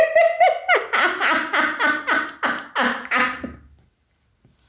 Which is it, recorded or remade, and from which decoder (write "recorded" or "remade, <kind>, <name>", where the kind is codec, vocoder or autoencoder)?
recorded